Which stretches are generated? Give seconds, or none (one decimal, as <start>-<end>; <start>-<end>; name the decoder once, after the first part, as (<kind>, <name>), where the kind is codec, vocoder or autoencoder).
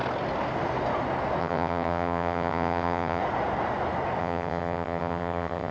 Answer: 1.4-3.2 (vocoder, HiFi-GAN); 4.2-5.7